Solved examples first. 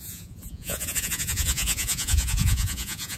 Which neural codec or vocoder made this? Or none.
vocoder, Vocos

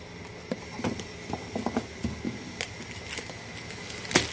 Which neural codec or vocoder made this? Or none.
none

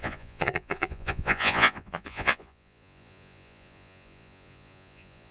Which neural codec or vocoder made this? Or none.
vocoder, Vocos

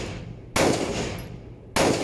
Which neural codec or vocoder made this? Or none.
none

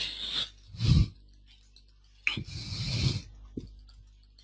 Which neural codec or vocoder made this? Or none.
none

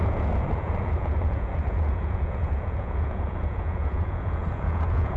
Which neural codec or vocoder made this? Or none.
vocoder, Vocos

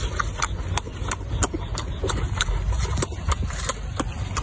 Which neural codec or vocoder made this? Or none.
none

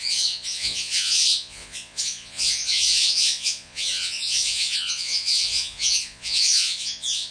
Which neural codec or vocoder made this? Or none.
vocoder, Vocos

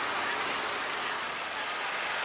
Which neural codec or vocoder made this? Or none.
none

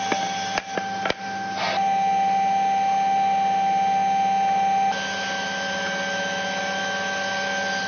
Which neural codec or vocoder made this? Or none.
none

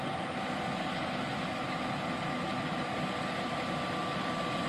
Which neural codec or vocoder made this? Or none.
none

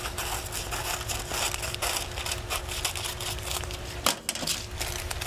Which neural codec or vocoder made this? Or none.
none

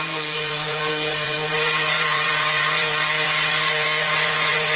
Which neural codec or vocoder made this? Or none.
vocoder, Vocos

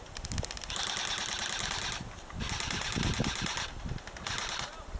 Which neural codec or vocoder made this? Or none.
none